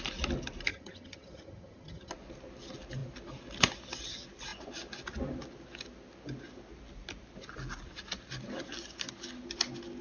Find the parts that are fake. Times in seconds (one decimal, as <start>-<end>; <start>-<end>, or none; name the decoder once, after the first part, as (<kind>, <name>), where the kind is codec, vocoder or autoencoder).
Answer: 0.7-2.1 (vocoder, HiFi-GAN)